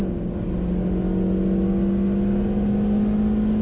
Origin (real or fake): real